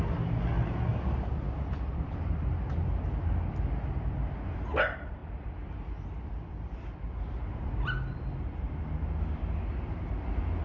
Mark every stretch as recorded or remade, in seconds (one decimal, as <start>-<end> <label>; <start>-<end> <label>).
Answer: 0.0-0.9 recorded; 0.9-2.1 remade; 2.1-5.2 recorded; 5.2-8.6 remade; 8.6-10.6 recorded